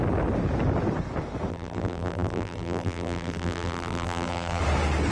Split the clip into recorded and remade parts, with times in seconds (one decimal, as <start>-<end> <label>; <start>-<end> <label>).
0.0-1.5 recorded; 1.5-4.6 remade; 4.6-5.1 recorded